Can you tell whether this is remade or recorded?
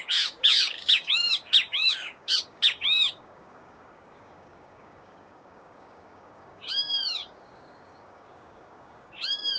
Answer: remade